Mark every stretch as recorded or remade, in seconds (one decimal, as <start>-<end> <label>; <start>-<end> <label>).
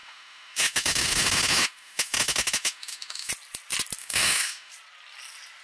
0.0-3.3 remade; 3.3-4.0 recorded; 4.0-4.7 remade; 4.7-5.6 recorded